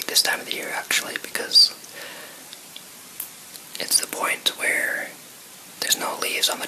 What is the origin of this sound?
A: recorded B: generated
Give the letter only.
A